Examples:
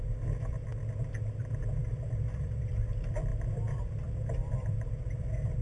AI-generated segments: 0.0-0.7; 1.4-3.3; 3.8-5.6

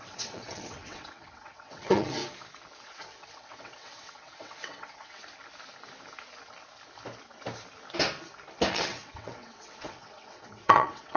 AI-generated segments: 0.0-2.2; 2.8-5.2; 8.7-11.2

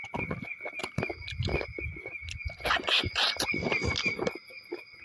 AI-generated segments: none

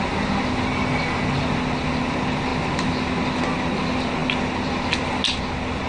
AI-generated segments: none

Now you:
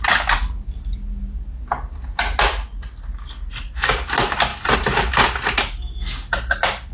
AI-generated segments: none

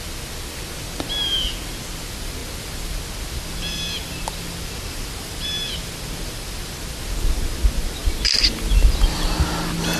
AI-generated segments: none